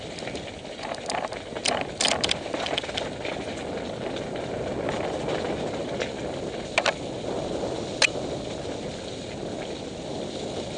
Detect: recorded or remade recorded